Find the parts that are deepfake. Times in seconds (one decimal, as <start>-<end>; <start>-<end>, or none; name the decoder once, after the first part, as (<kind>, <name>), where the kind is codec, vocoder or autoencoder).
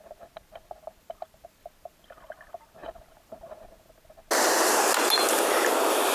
none